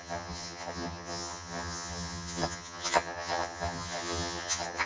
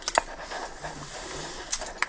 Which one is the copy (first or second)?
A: first